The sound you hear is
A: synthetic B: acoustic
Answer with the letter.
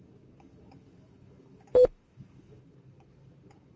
A